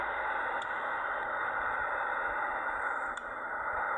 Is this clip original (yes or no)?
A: yes